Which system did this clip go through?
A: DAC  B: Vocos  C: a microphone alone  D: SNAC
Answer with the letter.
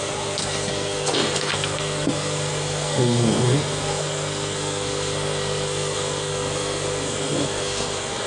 D